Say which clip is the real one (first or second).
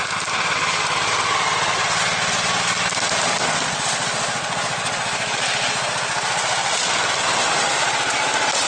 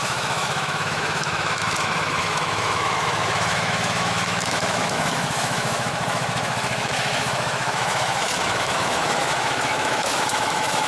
first